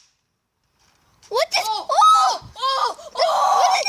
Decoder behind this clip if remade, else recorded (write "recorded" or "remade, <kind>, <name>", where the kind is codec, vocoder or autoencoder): remade, vocoder, BigVGAN v2